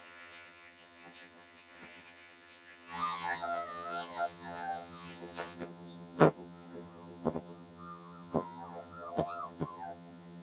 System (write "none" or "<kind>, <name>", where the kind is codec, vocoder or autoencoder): vocoder, HiFi-GAN